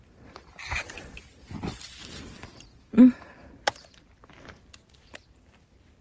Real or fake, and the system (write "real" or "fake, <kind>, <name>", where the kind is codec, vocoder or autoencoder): real